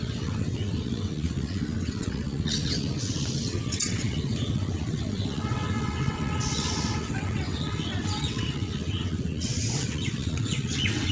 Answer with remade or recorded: remade